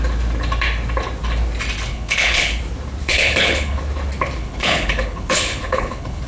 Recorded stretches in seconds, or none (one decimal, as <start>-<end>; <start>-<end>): 0.0-1.9; 2.6-3.0; 3.8-4.4